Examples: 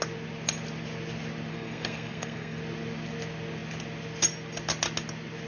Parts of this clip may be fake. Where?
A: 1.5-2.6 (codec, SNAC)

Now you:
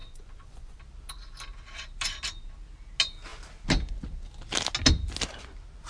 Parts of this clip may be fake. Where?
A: 0.0-0.8 (vocoder, Vocos)

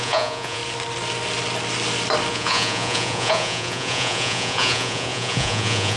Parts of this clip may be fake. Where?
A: 0.0-0.6 (vocoder, Vocos); 2.3-6.0

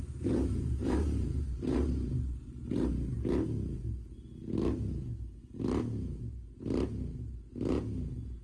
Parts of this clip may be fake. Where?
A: none

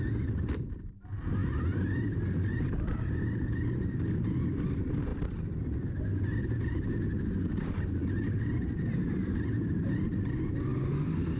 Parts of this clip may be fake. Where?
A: none